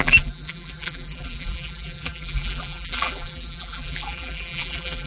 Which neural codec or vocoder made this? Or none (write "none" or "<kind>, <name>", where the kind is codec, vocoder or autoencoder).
vocoder, BigVGAN v2